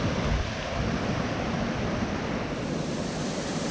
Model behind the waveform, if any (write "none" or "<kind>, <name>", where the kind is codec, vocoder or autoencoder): none